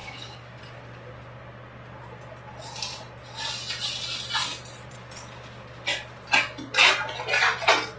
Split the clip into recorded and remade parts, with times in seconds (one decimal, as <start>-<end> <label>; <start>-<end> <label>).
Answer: 0.0-0.6 remade; 0.6-8.0 recorded